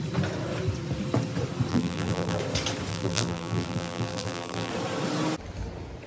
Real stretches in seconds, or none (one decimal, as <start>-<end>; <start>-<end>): 0.0-1.7; 2.4-2.9; 4.7-6.1